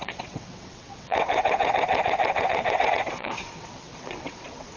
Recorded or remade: remade